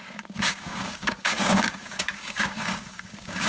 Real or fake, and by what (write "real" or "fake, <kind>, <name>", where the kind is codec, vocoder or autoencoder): fake, codec, DAC